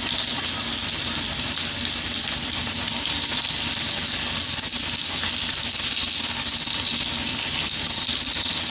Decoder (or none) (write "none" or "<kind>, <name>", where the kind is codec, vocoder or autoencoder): none